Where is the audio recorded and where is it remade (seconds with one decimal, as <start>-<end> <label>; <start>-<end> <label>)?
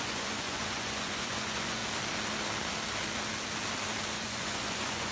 0.0-1.8 remade; 1.8-4.1 recorded; 4.1-5.1 remade